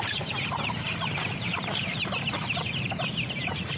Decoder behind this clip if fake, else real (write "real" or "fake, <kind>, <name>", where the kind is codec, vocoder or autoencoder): fake, vocoder, BigVGAN v2